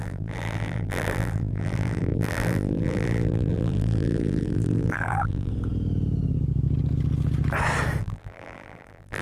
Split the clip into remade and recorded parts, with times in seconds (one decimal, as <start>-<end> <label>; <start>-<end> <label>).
0.0-5.5 remade; 5.5-8.0 recorded; 8.0-9.2 remade